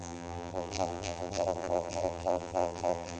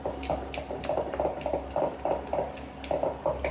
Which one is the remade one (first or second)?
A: first